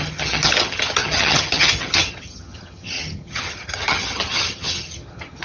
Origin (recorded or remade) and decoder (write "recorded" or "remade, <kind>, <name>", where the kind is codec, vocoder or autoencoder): remade, vocoder, HiFi-GAN